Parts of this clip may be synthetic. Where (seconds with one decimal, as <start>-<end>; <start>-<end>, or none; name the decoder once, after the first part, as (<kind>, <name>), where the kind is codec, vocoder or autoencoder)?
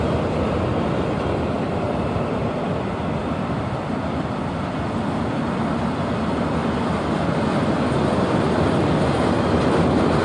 0.7-2.7 (vocoder, BigVGAN v2); 3.2-4.5; 6.6-10.2